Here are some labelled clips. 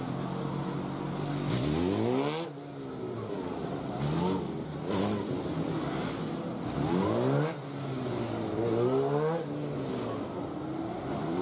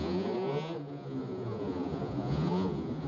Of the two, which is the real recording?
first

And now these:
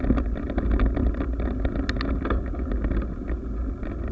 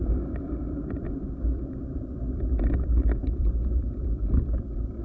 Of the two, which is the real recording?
first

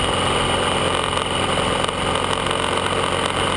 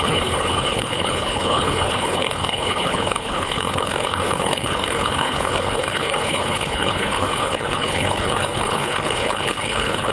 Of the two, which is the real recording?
first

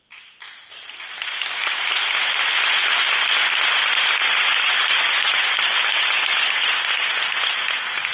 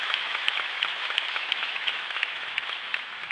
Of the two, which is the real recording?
first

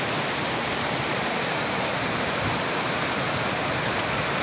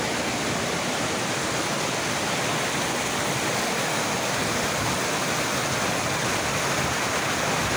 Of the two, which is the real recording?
second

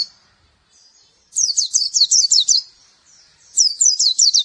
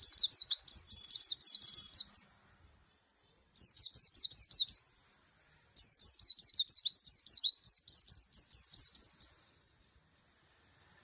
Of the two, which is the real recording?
second